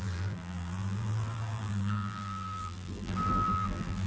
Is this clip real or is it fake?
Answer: fake